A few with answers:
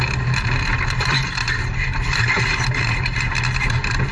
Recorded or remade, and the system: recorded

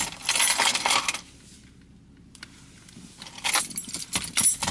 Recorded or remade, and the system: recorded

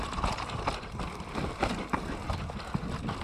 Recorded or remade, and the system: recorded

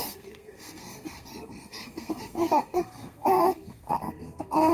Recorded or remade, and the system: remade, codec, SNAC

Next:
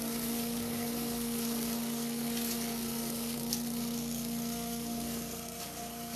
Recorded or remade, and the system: remade, codec, SNAC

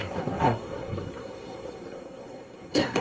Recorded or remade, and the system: remade, codec, SNAC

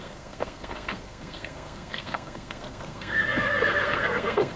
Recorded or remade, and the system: remade, codec, SNAC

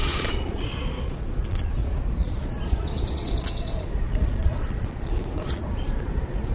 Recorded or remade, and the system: remade, vocoder, Vocos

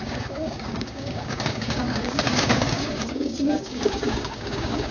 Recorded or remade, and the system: remade, codec, DAC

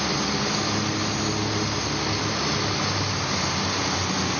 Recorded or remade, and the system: recorded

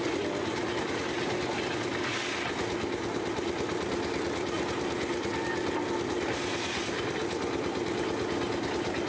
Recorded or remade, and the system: recorded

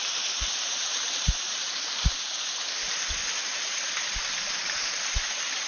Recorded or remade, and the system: remade, vocoder, BigVGAN v2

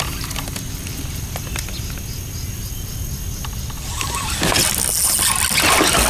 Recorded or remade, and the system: recorded